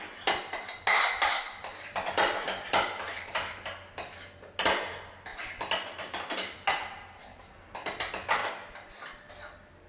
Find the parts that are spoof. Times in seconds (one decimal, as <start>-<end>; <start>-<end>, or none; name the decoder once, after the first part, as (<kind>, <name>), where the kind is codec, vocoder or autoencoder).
5.3-6.7 (vocoder, BigVGAN v2); 8.4-9.3